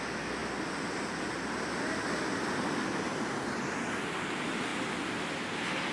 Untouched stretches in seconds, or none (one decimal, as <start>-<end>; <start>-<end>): 0.0-5.9